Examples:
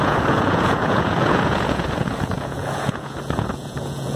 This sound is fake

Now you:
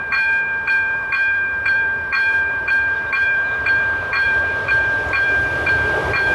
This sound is fake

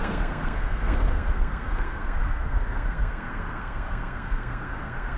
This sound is fake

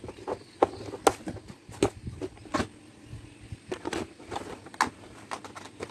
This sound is real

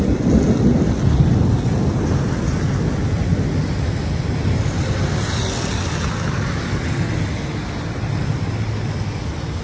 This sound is real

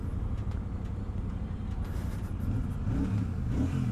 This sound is real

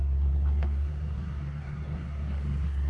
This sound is fake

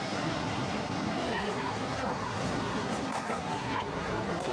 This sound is fake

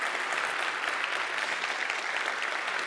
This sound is real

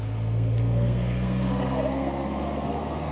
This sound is fake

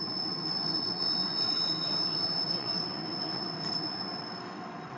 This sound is fake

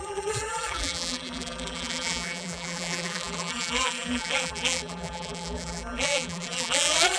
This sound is fake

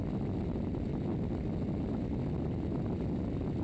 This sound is real